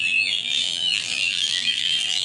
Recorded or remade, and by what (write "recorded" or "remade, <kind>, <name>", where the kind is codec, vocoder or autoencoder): remade, vocoder, BigVGAN v2